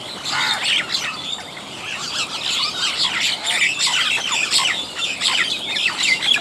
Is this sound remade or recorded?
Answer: remade